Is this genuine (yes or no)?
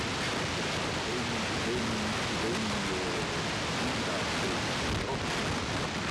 yes